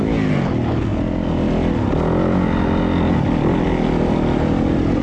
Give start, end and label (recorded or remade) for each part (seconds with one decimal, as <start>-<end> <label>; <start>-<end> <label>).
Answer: 0.0-5.0 recorded